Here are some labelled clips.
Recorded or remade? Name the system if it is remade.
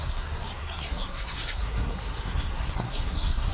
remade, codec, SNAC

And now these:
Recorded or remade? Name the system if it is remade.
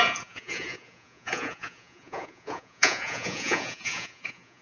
remade, vocoder, Vocos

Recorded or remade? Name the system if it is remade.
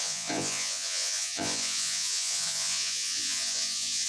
remade, vocoder, Vocos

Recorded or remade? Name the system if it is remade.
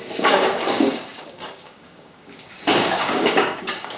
remade, codec, DAC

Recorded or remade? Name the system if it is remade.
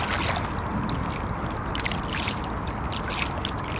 recorded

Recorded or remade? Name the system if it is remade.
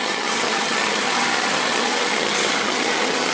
remade, vocoder, HiFi-GAN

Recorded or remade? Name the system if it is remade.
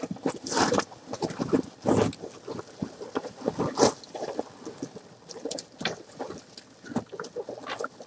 recorded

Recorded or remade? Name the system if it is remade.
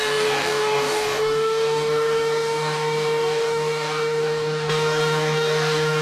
remade, codec, DAC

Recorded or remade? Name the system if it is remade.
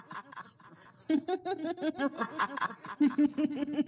recorded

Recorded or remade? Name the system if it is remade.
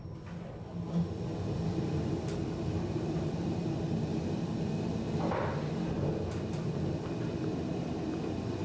remade, vocoder, BigVGAN v2